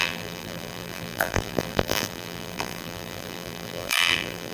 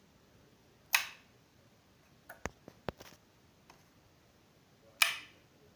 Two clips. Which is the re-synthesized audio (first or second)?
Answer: first